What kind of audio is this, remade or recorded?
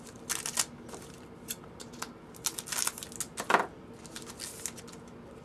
recorded